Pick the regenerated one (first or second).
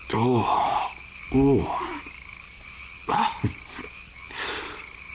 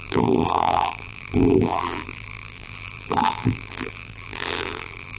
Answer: second